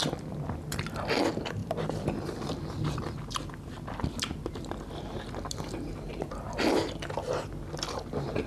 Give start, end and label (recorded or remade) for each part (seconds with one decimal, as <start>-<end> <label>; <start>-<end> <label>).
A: 0.0-8.5 recorded